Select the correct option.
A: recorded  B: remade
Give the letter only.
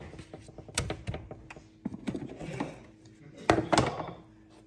A